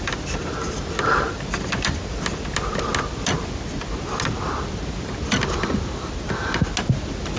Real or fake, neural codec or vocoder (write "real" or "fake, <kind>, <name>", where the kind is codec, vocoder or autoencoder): real